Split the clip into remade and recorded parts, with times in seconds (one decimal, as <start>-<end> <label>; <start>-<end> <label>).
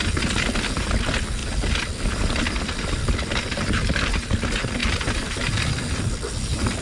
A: 0.0-1.4 recorded; 1.4-4.3 remade; 4.3-6.8 recorded